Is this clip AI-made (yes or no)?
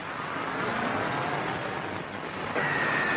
no